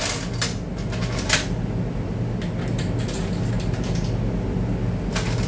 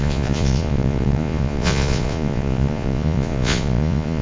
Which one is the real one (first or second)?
first